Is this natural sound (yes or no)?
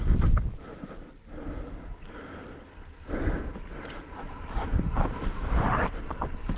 no